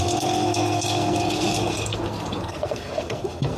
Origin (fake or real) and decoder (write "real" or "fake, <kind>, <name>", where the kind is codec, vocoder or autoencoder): fake, codec, SNAC